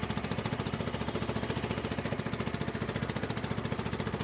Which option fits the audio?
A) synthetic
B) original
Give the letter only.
B